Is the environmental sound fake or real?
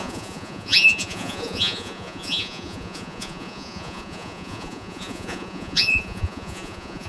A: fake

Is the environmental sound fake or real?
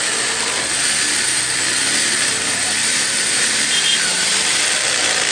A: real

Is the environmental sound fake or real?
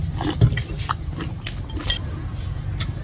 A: real